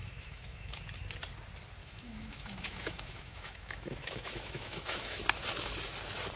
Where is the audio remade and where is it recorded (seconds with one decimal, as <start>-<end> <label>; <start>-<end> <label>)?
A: 0.0-0.8 remade; 0.8-1.8 recorded; 1.8-5.2 remade; 5.2-6.4 recorded